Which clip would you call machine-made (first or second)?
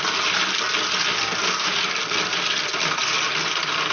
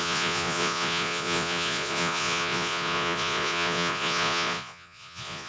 second